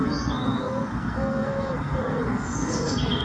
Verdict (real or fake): fake